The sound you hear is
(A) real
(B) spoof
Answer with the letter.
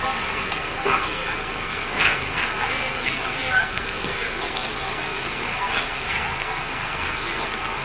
B